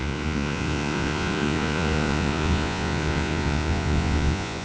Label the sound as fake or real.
fake